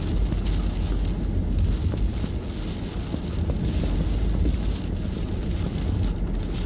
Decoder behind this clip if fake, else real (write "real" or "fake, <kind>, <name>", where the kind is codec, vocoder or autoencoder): real